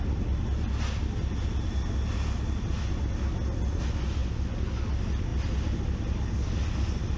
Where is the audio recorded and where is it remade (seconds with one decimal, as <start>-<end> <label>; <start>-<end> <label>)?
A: 0.0-7.2 recorded